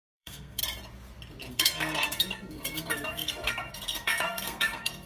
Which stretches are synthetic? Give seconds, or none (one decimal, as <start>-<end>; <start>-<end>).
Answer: 0.0-0.6; 1.5-5.1